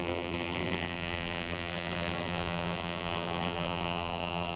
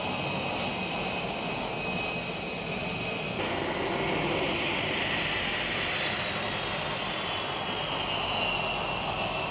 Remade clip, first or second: first